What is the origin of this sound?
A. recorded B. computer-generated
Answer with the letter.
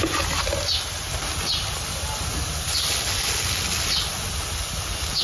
A